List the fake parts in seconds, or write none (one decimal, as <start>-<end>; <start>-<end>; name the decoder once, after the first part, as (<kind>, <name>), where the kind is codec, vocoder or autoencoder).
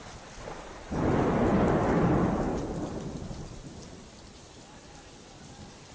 none